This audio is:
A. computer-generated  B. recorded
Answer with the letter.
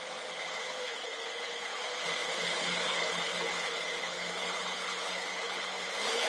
A